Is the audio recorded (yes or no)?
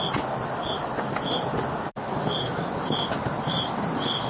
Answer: yes